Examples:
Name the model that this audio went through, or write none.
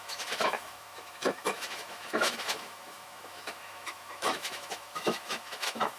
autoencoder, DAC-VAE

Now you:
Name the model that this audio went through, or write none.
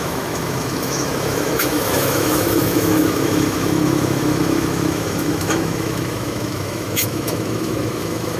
autoencoder, DAC-VAE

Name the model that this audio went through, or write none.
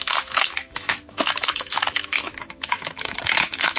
autoencoder, DAC-VAE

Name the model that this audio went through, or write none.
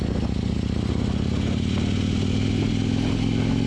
none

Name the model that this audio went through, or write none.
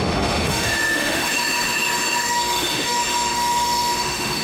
autoencoder, DAC-VAE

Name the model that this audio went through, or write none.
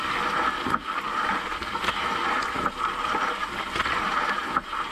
none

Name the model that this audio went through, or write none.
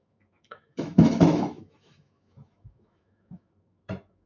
autoencoder, DAC-VAE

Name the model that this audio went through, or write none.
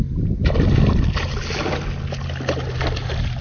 none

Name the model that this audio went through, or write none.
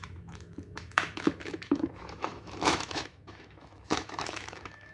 autoencoder, DAC-VAE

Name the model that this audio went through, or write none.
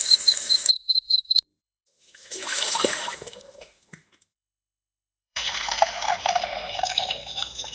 autoencoder, DAC-VAE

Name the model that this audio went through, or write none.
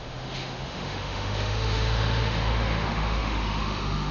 autoencoder, DAC-VAE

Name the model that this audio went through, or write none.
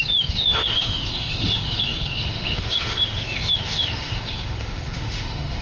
autoencoder, DAC-VAE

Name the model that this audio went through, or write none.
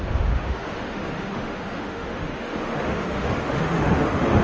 autoencoder, DAC-VAE